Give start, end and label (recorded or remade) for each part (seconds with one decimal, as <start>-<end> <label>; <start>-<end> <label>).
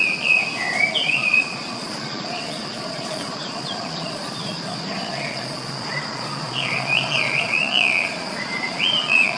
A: 0.0-0.4 remade; 0.4-0.9 recorded; 0.9-9.4 remade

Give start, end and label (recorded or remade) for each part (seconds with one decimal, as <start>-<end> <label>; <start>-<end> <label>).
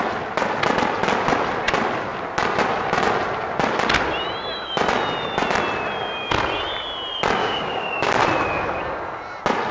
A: 0.0-7.4 recorded; 7.4-8.1 remade; 8.1-9.7 recorded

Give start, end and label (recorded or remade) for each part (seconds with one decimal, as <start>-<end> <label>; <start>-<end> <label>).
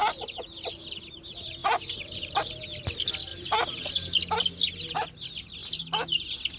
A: 0.0-1.6 recorded; 1.6-2.4 remade; 2.4-3.3 recorded; 3.3-3.9 remade; 3.9-6.6 recorded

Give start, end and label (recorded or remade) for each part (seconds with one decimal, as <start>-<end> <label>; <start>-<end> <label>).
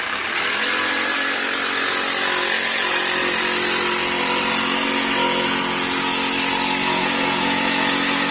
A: 0.0-6.8 recorded; 6.8-8.3 remade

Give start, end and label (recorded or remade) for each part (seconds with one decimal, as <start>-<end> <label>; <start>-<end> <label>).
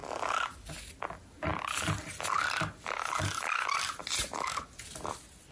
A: 0.0-5.5 recorded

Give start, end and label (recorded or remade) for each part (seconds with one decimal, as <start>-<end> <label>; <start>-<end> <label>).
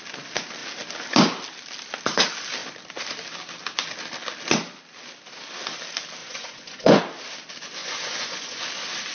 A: 0.0-6.2 recorded; 6.2-7.0 remade; 7.0-7.8 recorded; 7.8-8.6 remade; 8.6-9.1 recorded